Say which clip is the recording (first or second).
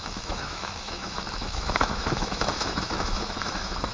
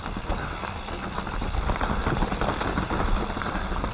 second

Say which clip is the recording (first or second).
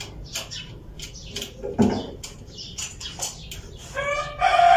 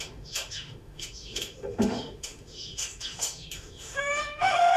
first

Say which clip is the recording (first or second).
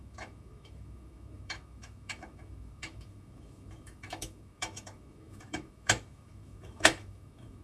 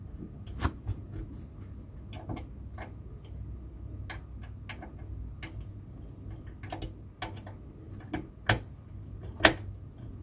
second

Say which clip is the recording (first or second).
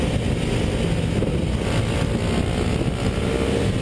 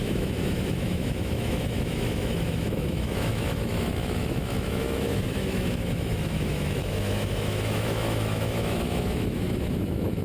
first